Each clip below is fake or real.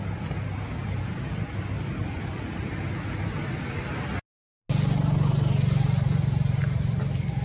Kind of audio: real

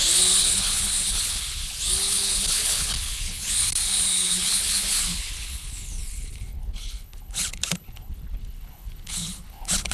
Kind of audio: fake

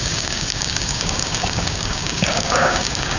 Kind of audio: fake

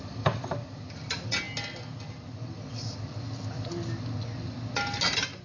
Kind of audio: real